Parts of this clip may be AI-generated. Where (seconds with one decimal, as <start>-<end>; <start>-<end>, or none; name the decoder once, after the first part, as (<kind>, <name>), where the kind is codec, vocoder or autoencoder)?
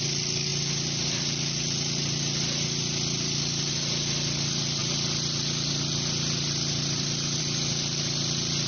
none